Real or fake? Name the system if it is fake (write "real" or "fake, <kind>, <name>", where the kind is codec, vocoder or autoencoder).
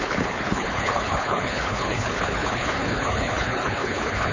fake, codec, HILCodec